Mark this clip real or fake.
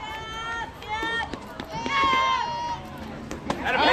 real